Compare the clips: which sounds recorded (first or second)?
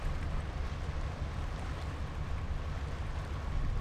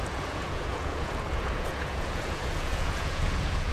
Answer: first